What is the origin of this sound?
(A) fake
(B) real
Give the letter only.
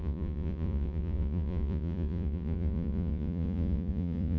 A